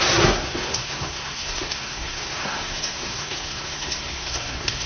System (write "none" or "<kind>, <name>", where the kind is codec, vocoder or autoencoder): codec, SNAC